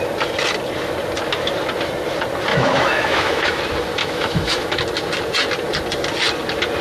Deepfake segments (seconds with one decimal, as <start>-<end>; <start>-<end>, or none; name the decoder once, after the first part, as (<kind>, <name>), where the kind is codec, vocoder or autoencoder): 2.5-3.6 (autoencoder, DAC-VAE); 4.0-4.8